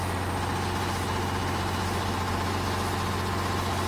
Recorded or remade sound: recorded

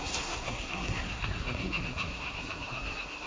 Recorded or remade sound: remade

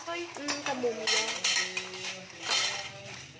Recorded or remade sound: recorded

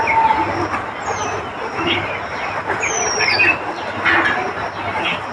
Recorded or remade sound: recorded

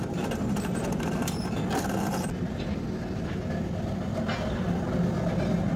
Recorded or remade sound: recorded